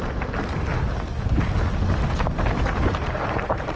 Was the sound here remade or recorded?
recorded